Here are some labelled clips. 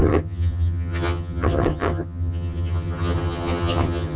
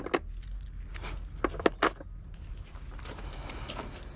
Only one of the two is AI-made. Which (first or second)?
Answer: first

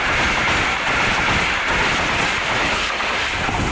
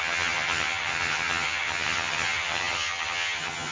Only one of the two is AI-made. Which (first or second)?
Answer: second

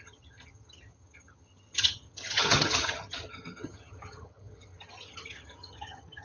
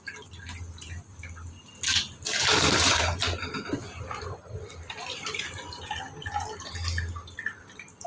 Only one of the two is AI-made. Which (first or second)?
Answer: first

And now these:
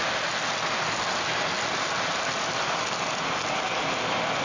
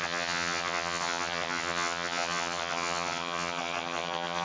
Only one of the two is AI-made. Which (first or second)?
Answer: second